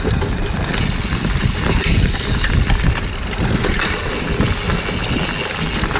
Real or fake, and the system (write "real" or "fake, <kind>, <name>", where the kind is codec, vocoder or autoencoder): real